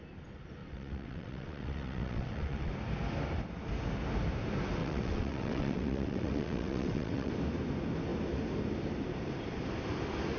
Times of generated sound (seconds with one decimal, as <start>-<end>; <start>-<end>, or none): 0.6-2.7; 4.8-7.3